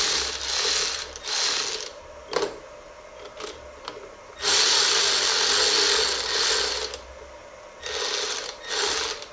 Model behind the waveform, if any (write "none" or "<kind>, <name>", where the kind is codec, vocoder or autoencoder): none